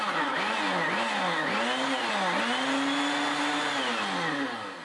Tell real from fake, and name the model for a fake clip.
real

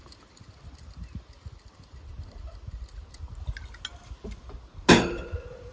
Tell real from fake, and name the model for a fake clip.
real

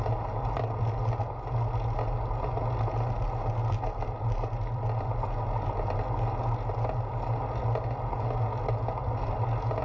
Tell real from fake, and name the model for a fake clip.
real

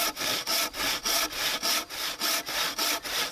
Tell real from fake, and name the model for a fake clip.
real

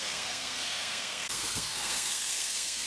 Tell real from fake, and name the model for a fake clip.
fake, codec, SNAC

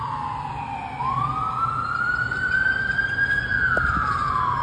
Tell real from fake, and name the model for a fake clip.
real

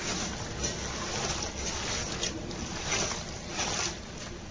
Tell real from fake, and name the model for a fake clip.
real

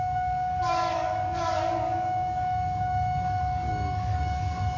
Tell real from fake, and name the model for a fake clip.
fake, codec, DAC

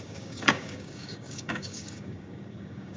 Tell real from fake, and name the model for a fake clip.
fake, codec, DAC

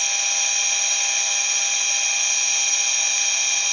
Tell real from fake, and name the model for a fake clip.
real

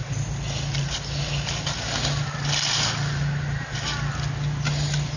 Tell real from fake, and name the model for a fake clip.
real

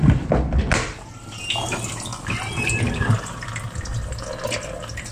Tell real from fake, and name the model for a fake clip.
real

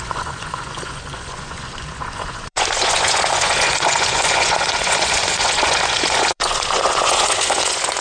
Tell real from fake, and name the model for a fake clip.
fake, vocoder, Vocos